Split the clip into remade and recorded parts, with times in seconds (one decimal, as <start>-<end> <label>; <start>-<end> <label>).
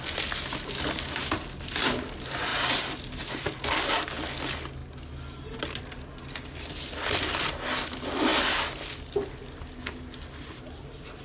0.0-11.2 recorded